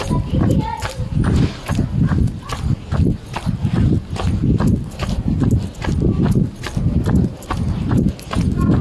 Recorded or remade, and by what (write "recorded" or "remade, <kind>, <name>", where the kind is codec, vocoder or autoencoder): recorded